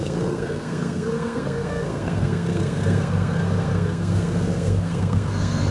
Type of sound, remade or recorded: remade